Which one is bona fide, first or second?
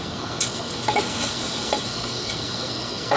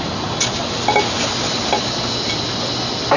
second